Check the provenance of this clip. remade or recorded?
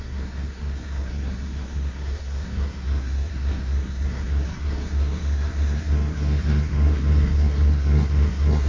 remade